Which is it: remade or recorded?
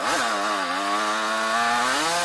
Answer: recorded